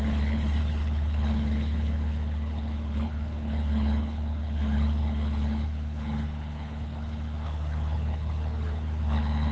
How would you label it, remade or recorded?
remade